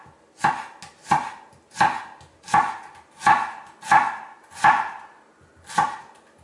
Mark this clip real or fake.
real